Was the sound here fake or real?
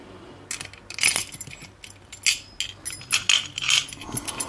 real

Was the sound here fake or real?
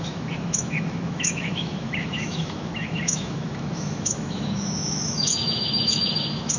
fake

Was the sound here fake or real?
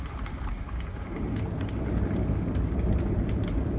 real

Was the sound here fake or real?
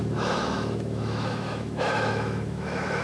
fake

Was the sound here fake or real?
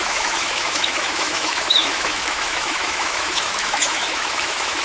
fake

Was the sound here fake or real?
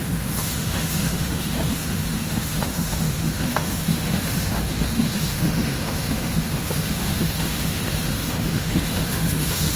fake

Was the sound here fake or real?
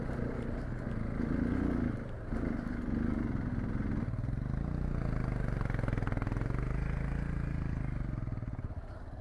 real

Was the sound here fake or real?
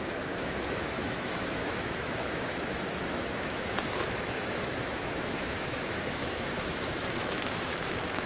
fake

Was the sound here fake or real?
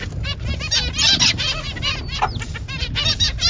real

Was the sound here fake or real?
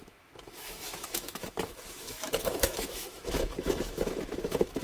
fake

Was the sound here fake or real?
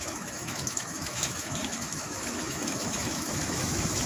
fake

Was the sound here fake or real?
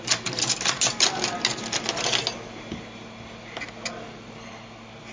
real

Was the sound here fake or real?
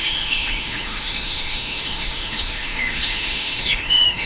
fake